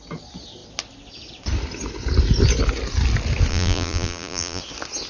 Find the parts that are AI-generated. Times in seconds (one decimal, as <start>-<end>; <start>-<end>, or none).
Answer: 3.5-4.6